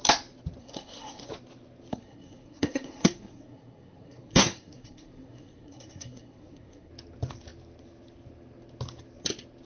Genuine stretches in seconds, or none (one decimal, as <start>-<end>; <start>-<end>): 0.0-0.6; 1.3-1.9; 6.9-9.6